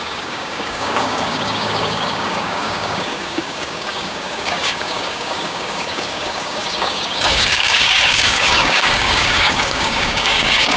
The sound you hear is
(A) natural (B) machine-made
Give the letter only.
B